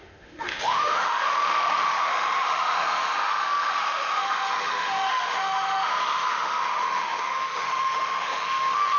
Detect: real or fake fake